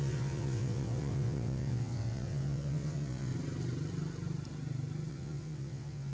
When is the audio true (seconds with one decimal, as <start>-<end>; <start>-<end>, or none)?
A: 3.3-5.1